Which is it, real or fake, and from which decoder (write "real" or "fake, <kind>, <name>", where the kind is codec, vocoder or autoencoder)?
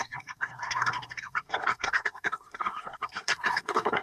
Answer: fake, codec, SNAC